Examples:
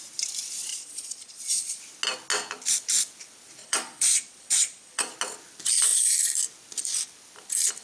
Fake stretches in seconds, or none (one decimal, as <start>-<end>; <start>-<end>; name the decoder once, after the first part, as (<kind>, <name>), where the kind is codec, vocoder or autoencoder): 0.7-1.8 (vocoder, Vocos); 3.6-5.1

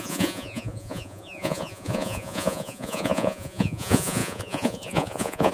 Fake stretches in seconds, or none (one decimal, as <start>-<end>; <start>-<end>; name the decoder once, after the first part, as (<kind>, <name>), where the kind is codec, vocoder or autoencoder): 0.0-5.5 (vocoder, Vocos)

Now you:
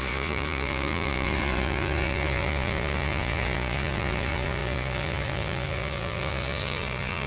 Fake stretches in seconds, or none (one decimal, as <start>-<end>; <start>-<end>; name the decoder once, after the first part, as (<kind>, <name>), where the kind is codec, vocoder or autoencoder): 0.0-7.3 (vocoder, Vocos)

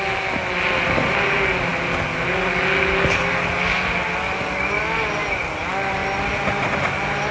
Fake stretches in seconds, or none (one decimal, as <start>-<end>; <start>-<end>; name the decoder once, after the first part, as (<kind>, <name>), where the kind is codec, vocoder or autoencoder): none